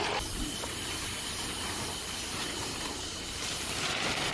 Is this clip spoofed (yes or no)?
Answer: no